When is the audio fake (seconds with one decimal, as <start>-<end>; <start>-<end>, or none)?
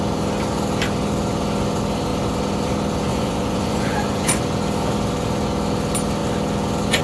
3.1-4.3